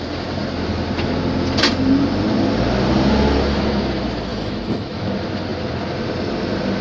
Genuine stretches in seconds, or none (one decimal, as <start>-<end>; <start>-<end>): 0.0-4.3; 5.0-6.8